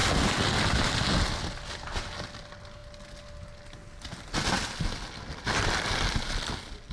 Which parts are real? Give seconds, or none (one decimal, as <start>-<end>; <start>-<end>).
0.0-6.9